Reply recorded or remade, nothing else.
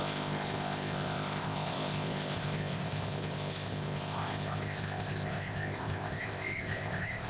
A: remade